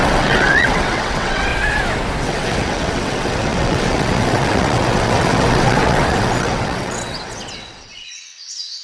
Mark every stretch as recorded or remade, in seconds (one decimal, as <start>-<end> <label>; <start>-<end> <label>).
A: 0.0-1.5 remade; 1.5-2.2 recorded; 2.2-8.8 remade